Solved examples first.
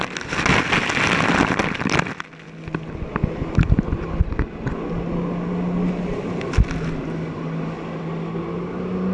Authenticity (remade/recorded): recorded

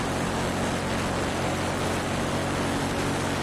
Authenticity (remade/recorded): recorded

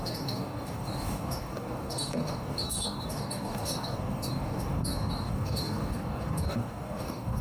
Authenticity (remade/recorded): remade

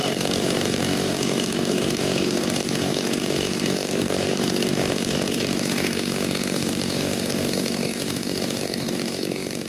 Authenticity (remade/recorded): remade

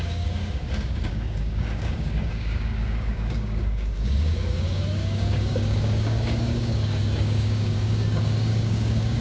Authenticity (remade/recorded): remade